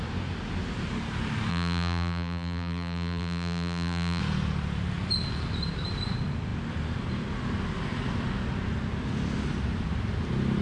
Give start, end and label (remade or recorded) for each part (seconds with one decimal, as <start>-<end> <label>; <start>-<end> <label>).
0.0-1.5 recorded; 1.5-4.2 remade; 4.2-10.6 recorded